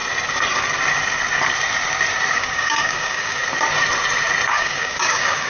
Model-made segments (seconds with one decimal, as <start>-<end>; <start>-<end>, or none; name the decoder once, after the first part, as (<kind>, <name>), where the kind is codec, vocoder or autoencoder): 2.3-3.4 (codec, DAC); 4.5-5.5